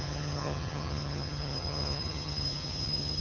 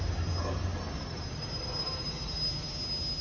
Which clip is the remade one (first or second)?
first